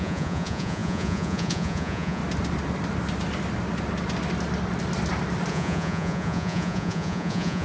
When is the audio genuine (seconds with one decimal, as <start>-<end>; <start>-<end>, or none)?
2.2-5.5